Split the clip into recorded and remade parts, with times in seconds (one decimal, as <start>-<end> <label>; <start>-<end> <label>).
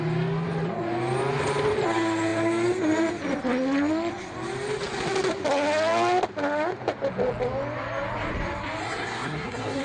0.0-8.8 recorded; 8.8-9.8 remade